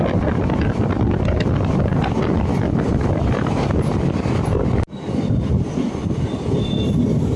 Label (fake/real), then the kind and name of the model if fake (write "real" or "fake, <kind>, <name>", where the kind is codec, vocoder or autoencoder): real